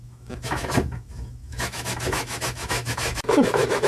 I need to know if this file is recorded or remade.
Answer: remade